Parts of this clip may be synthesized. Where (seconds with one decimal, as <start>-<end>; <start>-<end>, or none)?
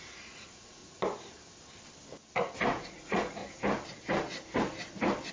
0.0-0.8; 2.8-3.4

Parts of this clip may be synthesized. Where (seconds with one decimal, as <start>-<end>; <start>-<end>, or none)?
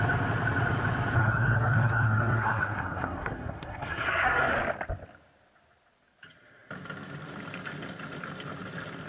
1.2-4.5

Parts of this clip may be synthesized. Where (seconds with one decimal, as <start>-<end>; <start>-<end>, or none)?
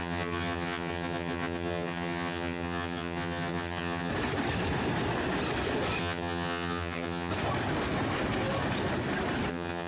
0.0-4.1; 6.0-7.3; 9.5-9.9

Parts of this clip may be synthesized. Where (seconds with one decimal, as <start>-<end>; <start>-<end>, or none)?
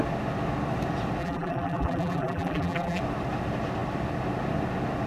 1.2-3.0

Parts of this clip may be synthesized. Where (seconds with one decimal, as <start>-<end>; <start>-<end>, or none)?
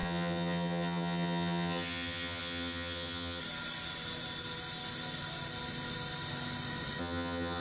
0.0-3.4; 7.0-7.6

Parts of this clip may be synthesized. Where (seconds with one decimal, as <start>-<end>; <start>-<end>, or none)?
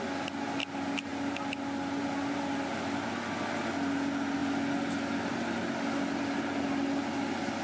none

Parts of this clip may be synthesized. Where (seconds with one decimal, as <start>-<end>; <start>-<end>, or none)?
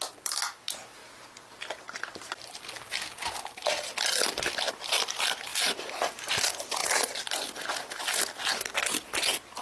none